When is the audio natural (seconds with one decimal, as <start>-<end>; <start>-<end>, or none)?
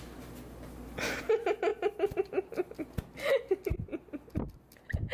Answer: 0.0-5.1